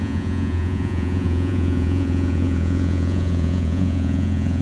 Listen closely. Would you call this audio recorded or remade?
remade